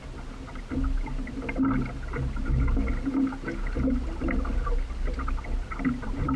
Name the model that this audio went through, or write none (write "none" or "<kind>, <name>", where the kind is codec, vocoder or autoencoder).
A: none